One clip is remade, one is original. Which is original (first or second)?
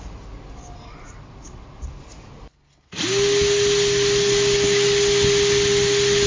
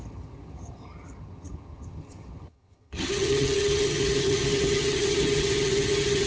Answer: first